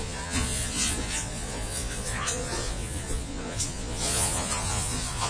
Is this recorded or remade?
remade